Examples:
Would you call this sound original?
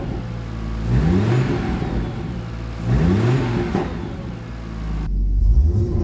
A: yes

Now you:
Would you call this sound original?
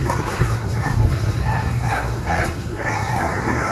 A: no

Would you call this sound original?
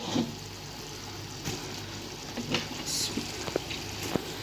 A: yes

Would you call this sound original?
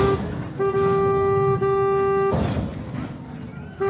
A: yes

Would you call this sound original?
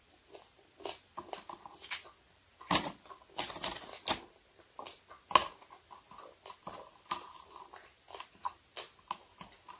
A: yes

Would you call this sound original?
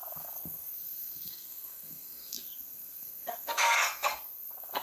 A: no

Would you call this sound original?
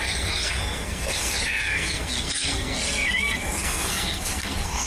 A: no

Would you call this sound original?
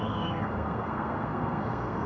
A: no